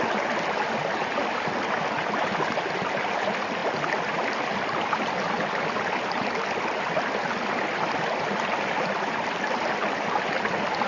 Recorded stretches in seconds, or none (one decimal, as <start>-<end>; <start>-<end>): 0.0-10.9